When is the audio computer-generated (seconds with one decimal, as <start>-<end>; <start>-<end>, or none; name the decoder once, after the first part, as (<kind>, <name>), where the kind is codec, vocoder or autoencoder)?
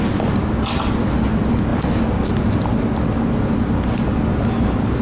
none